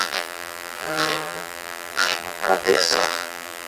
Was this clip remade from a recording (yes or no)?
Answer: yes